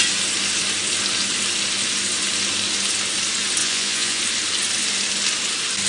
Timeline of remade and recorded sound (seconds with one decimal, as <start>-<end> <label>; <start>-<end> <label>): 0.0-3.6 recorded; 3.6-4.2 remade; 4.2-5.9 recorded